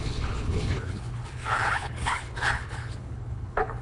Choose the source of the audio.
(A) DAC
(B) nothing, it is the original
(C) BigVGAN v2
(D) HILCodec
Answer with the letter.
D